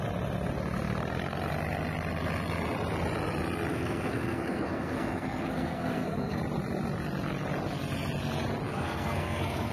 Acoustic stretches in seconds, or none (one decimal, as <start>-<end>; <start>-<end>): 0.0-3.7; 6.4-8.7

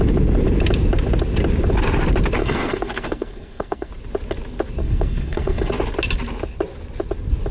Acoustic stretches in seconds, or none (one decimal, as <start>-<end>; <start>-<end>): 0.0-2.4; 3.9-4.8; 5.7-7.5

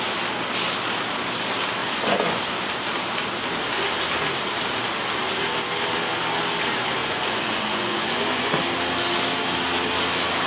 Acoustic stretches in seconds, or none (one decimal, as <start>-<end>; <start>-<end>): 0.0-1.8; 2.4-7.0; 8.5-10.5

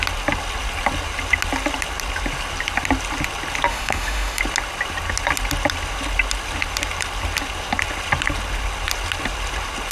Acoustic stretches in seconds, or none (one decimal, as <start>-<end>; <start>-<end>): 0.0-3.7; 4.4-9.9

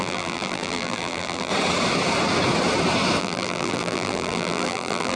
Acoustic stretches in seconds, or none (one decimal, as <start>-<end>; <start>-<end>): 1.5-3.2

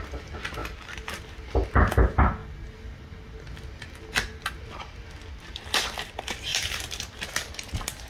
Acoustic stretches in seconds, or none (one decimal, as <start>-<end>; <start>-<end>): 0.0-6.5; 7.2-8.1